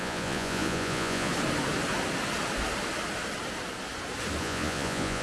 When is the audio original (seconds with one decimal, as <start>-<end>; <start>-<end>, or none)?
1.3-4.4